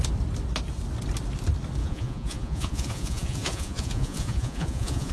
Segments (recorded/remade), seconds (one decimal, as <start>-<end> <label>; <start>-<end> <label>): 0.0-1.8 recorded; 1.8-5.1 remade